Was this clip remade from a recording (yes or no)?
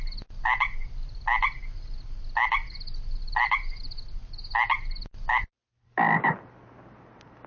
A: no